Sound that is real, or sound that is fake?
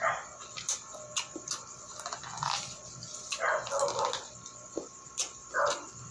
real